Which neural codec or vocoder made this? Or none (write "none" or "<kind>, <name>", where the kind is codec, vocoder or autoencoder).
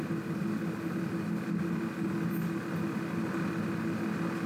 none